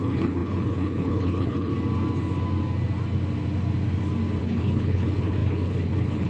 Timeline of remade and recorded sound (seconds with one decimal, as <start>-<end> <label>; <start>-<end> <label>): 0.0-1.7 remade; 1.7-4.4 recorded; 4.4-6.3 remade